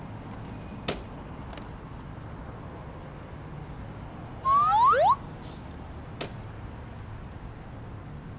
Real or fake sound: real